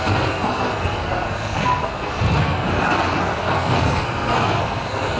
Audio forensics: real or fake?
fake